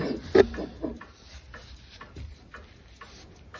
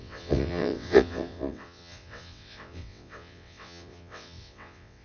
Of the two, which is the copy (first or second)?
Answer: second